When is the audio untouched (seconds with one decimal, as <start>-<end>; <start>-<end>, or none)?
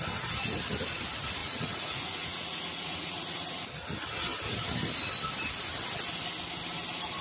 0.0-1.4; 3.6-7.2